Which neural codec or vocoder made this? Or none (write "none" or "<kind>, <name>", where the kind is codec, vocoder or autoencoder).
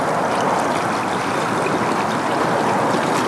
none